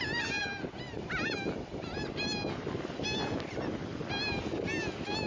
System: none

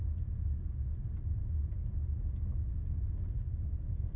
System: none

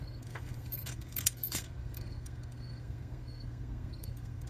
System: codec, SNAC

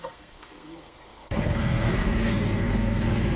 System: codec, SNAC